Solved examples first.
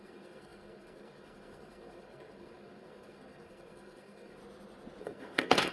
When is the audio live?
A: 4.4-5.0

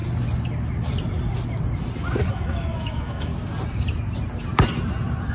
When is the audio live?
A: 0.0-2.3; 3.3-5.3

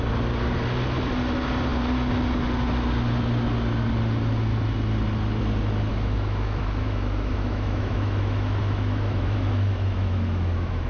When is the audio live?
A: 0.0-5.9

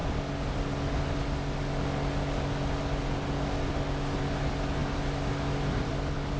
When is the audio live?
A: 0.0-6.4

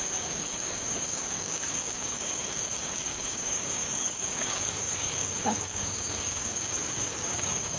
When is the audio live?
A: none